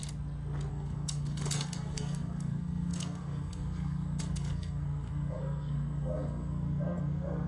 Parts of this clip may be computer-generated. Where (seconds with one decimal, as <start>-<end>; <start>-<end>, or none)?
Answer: 0.7-7.5